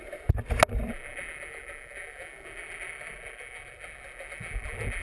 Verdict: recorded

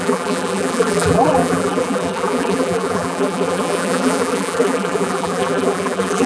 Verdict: remade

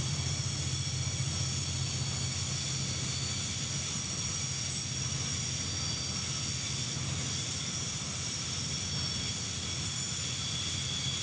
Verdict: recorded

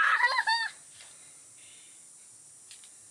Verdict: recorded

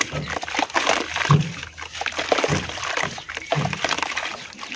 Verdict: recorded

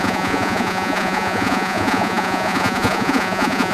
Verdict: remade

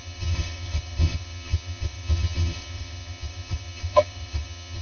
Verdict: remade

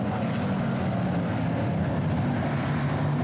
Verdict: recorded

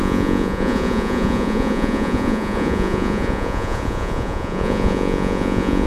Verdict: remade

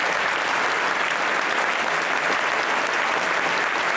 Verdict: recorded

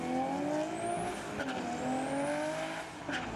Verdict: recorded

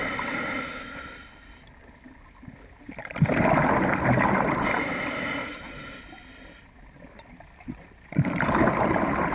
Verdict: recorded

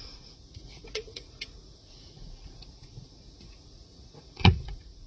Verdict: remade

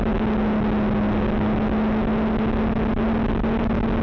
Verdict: recorded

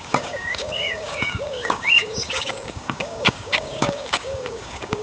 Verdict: remade